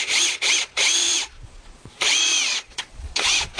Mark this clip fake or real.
fake